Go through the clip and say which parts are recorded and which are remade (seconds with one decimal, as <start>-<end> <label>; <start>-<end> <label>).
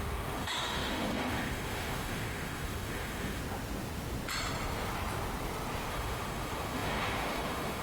0.0-3.4 remade; 3.4-5.9 recorded; 5.9-7.8 remade